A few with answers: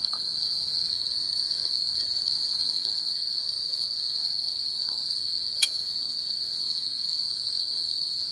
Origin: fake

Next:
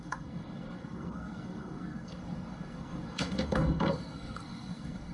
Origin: fake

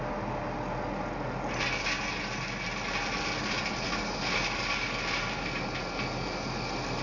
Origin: real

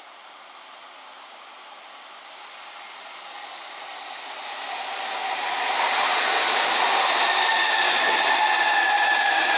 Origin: real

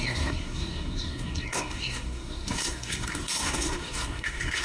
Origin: fake